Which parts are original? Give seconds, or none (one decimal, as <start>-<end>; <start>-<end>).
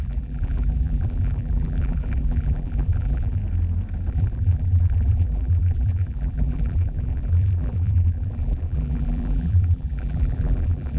3.4-4.1